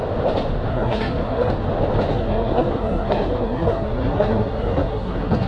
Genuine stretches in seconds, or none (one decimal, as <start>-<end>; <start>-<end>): 0.0-0.7; 1.5-2.1